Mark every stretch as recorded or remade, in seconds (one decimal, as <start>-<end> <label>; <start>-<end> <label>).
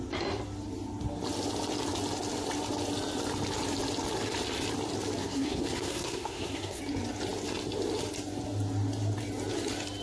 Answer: 0.0-5.2 recorded; 5.2-6.8 remade; 6.8-10.0 recorded